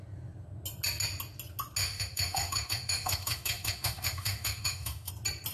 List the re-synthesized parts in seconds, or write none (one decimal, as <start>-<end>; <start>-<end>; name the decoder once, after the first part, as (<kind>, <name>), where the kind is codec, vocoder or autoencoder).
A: 1.8-5.1 (autoencoder, DAC-VAE)